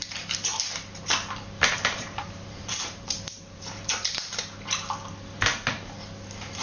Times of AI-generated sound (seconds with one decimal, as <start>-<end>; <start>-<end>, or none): 1.7-4.4